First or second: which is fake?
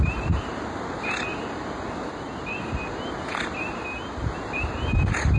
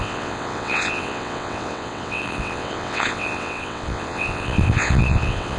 second